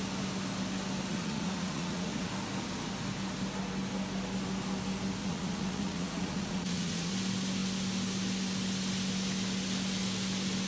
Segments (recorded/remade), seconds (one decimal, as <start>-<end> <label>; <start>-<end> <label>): 0.0-1.1 recorded; 1.1-2.3 remade; 2.3-5.2 recorded; 5.2-7.1 remade; 7.1-10.7 recorded